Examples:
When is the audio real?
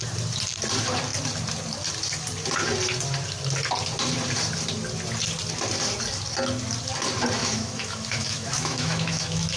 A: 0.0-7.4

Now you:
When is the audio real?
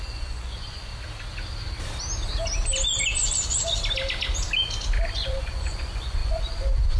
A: 0.9-5.1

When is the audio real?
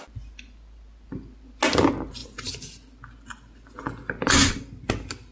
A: 0.0-5.3